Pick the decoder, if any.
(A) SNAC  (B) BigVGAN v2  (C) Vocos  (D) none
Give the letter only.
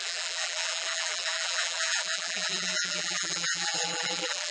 B